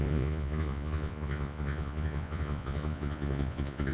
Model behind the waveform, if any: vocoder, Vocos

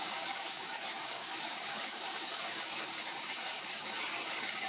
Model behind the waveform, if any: codec, DAC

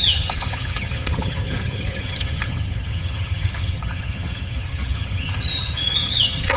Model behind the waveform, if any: vocoder, HiFi-GAN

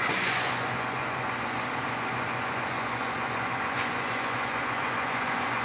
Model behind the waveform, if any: vocoder, Vocos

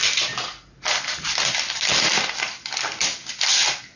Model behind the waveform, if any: none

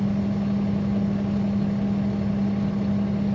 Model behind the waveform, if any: none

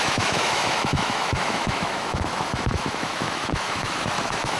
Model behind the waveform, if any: autoencoder, DAC-VAE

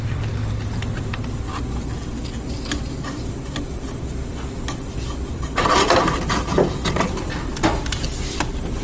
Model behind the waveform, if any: vocoder, BigVGAN v2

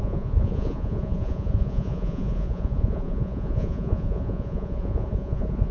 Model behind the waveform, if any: vocoder, Vocos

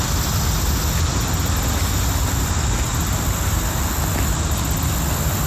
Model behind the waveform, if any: none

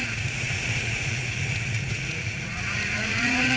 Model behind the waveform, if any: vocoder, Vocos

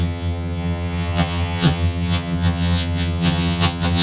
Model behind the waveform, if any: vocoder, HiFi-GAN